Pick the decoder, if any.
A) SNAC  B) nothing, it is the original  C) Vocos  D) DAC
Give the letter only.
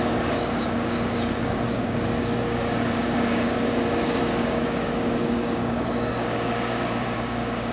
D